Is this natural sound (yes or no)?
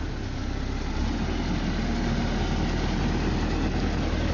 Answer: yes